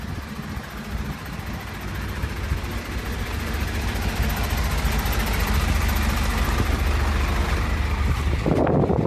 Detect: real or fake real